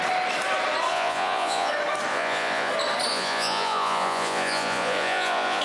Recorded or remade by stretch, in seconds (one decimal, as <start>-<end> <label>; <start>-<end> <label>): 0.0-0.9 recorded; 0.9-1.7 remade; 1.7-2.1 recorded; 2.1-2.7 remade; 2.7-3.1 recorded; 3.1-5.6 remade